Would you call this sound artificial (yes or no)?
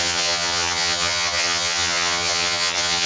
yes